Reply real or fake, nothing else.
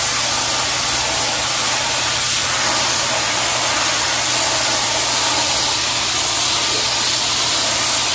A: real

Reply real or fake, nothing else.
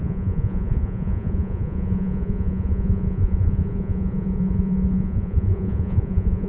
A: fake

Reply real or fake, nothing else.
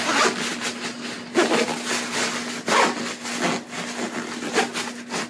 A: real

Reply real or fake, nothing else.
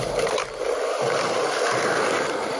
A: real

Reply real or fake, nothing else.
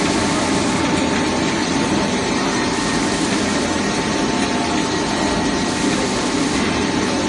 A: real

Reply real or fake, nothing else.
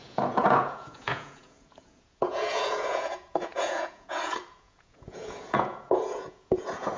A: fake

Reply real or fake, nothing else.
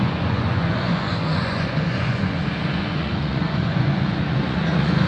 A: fake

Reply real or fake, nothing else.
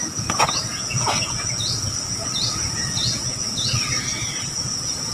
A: fake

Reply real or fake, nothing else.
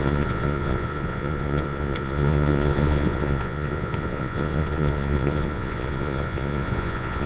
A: fake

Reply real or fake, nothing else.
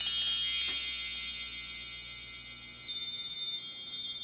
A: real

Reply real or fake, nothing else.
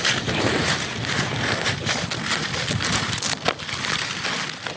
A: real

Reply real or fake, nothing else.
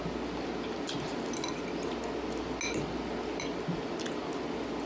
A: real